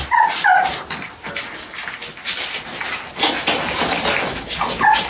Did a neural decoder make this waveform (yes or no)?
no